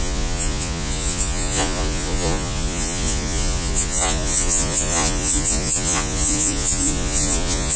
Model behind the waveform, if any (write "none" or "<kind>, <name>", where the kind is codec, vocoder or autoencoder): vocoder, Vocos